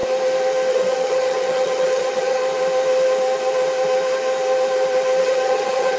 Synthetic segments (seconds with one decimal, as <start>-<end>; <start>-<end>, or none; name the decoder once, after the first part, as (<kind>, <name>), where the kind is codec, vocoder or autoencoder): 0.7-2.4 (vocoder, HiFi-GAN); 5.2-6.0